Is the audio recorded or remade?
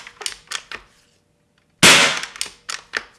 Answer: recorded